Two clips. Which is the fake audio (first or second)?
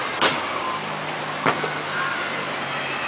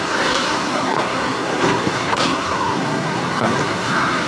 second